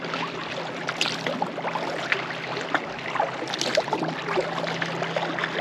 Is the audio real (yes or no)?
yes